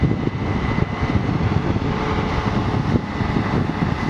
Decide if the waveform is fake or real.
real